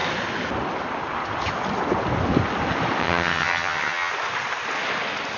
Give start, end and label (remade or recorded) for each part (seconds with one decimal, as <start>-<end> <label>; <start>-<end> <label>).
0.0-3.0 recorded; 3.0-4.1 remade; 4.1-5.4 recorded

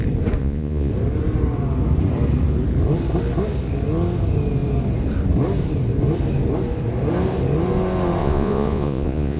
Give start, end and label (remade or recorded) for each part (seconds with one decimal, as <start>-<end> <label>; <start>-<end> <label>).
0.0-0.4 recorded; 0.4-0.9 remade; 0.9-8.2 recorded; 8.2-9.4 remade

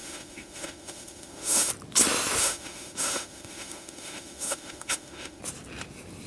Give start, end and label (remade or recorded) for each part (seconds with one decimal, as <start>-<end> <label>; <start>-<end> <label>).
0.0-1.7 remade; 1.7-2.4 recorded; 2.4-5.4 remade; 5.4-6.3 recorded

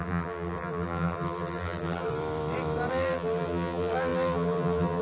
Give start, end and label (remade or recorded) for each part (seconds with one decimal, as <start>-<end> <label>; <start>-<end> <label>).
0.0-2.1 remade; 2.1-2.9 recorded; 2.9-5.0 remade

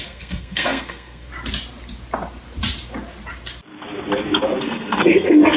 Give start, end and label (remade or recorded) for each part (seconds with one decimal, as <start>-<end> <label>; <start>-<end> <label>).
0.0-1.3 remade; 1.3-4.6 recorded; 4.6-5.6 remade

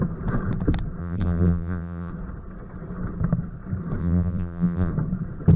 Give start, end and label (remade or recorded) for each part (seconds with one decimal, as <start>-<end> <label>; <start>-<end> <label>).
0.0-1.0 recorded; 1.0-2.1 remade; 2.1-4.0 recorded; 4.0-4.9 remade; 4.9-5.6 recorded

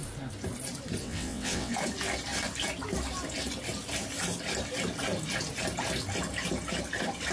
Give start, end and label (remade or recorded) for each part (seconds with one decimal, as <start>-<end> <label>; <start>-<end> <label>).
0.0-1.0 recorded; 1.0-1.7 remade; 1.7-7.3 recorded

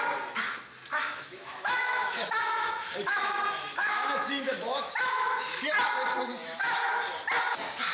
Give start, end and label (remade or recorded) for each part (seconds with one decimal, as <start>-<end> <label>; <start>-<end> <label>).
0.0-0.9 recorded; 0.9-5.6 remade; 5.6-6.4 recorded; 6.4-7.0 remade; 7.0-7.9 recorded